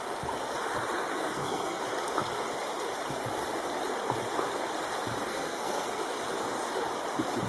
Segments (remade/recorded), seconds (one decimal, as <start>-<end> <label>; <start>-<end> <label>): 0.0-1.1 recorded; 1.1-1.8 remade; 1.8-5.3 recorded; 5.3-6.0 remade; 6.0-7.5 recorded